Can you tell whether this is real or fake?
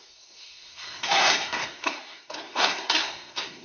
fake